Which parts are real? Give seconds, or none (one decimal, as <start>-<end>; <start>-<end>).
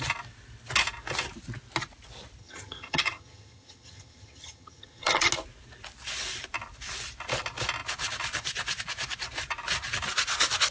0.0-2.4; 5.3-10.7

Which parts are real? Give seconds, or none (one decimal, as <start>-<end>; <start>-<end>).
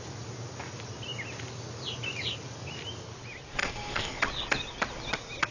0.0-3.6; 4.2-5.5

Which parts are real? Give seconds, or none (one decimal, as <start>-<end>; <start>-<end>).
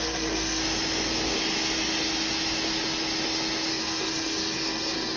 0.6-3.7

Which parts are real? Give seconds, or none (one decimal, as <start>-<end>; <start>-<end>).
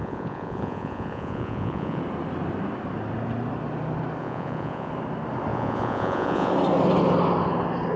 2.0-4.2; 4.9-5.5; 6.5-8.0